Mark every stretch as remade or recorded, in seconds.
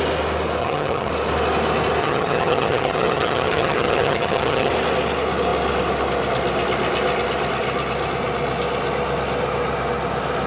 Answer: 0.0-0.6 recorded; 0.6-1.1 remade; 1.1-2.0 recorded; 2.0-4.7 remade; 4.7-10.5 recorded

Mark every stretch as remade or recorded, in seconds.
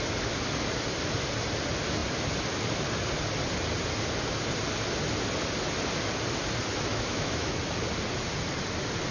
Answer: 0.0-6.9 recorded; 6.9-7.6 remade; 7.6-9.1 recorded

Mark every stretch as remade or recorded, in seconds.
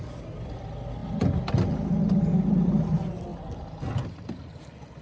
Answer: 0.0-5.0 recorded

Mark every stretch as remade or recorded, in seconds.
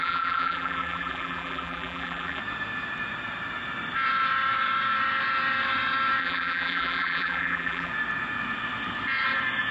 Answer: 0.0-2.4 remade; 2.4-6.2 recorded; 6.2-7.9 remade; 7.9-9.7 recorded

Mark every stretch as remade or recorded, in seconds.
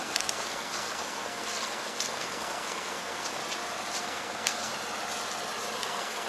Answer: 0.0-3.4 remade; 3.4-4.0 recorded; 4.0-4.7 remade; 4.7-5.8 recorded; 5.8-6.3 remade